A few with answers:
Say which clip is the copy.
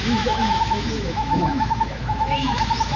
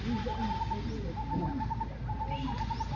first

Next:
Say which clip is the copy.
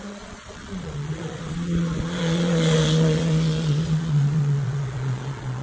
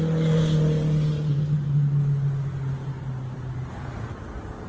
first